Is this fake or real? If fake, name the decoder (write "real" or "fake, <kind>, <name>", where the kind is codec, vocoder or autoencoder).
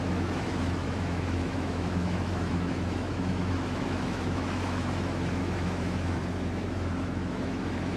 fake, autoencoder, DAC-VAE